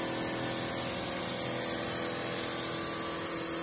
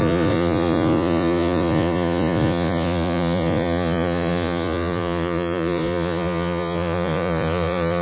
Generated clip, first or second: second